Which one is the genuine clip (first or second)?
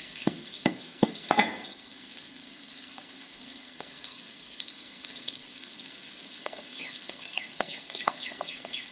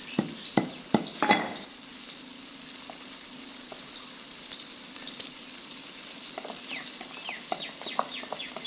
second